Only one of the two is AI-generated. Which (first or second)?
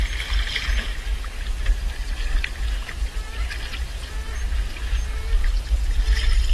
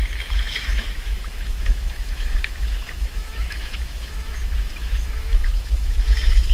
second